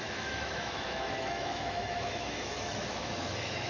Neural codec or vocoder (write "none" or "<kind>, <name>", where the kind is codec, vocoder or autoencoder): autoencoder, DAC-VAE